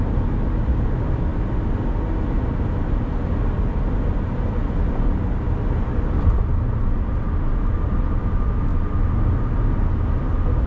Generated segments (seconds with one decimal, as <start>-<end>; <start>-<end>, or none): none